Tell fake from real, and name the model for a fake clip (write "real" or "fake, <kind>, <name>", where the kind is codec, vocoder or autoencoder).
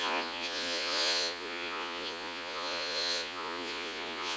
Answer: fake, vocoder, Vocos